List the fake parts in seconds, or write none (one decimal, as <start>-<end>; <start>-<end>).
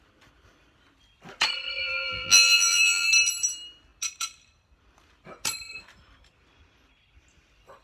1.8-3.1